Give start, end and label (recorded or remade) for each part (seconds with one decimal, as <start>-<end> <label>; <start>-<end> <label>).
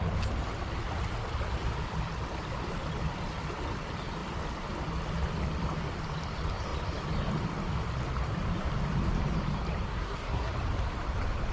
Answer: 0.0-9.9 recorded; 9.9-10.5 remade; 10.5-11.5 recorded